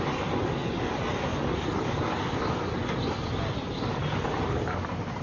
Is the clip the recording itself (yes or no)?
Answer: yes